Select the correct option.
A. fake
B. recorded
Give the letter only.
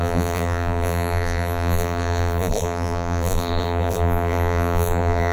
A